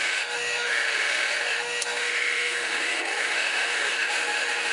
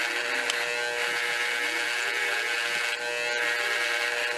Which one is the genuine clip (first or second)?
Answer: second